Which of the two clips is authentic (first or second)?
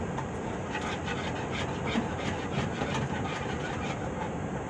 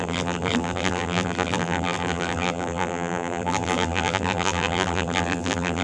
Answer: first